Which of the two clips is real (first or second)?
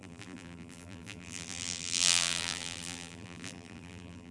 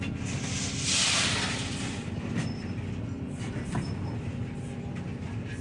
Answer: second